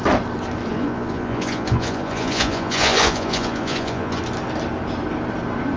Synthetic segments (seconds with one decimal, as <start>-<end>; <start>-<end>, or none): 0.7-4.2